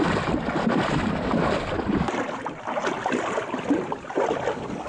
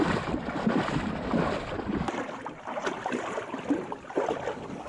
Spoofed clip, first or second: second